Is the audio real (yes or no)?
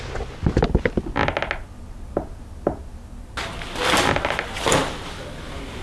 yes